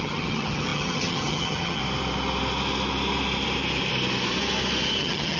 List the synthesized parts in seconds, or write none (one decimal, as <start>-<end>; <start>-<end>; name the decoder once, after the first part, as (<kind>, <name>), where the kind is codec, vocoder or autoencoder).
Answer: 0.0-1.8 (vocoder, HiFi-GAN); 5.0-5.4